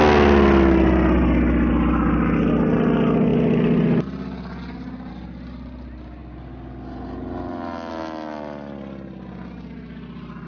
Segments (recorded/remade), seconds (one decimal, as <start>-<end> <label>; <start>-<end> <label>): 0.0-10.5 recorded